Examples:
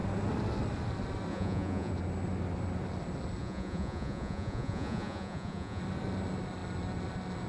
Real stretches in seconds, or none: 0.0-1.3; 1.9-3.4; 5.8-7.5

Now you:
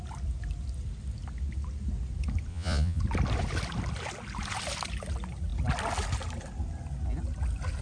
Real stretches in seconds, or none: 0.0-2.5; 3.0-7.8

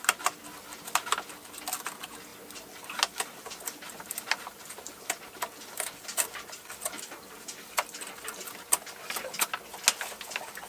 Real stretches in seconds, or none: 0.0-10.7

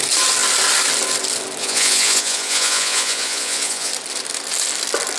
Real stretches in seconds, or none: 0.0-1.6; 3.9-5.2

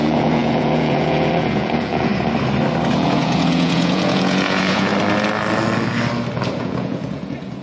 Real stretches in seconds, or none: 2.1-2.9; 4.9-6.6

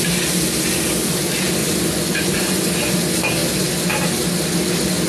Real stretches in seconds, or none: 0.0-1.6; 2.7-5.1

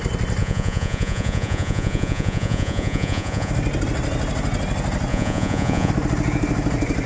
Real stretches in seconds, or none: 0.0-0.4; 3.5-5.1; 5.9-7.1

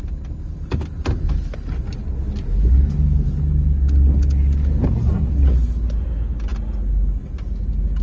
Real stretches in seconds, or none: 0.0-8.0